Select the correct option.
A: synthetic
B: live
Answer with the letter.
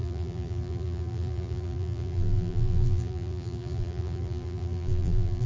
A